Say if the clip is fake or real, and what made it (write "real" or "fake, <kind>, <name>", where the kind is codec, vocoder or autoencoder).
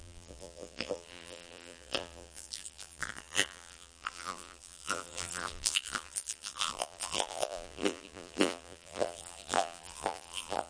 fake, vocoder, BigVGAN v2